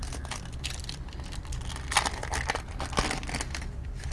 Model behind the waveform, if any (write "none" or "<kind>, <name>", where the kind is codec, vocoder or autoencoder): none